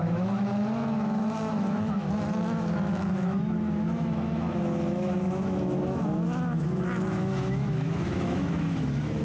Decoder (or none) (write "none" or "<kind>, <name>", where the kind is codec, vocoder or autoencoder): autoencoder, DAC-VAE